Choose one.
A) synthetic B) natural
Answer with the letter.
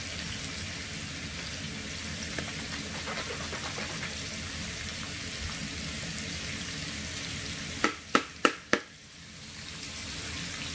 B